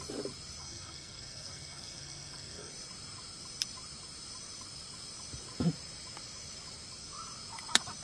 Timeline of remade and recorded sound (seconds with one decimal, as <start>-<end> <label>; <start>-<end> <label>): 0.0-0.6 recorded; 0.6-2.7 remade; 2.7-8.0 recorded